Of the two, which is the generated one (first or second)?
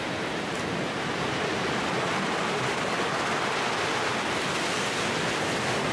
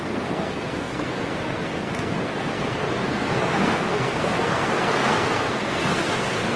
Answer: second